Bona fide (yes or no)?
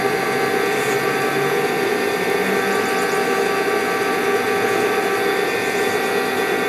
yes